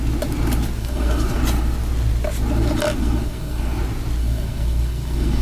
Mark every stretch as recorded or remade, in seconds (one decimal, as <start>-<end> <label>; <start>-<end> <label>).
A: 0.0-0.8 recorded; 0.8-1.4 remade; 1.4-3.0 recorded; 3.0-3.8 remade; 3.8-4.2 recorded; 4.2-5.4 remade